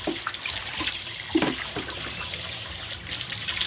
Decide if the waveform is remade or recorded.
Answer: recorded